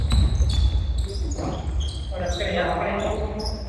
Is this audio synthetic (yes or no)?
no